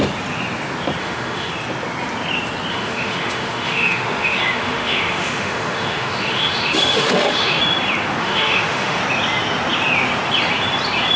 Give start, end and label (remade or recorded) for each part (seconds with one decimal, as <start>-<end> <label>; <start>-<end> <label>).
0.0-1.0 recorded; 1.0-1.5 remade; 1.5-2.7 recorded; 2.7-7.6 remade; 7.6-8.2 recorded; 8.2-9.0 remade; 9.0-11.2 recorded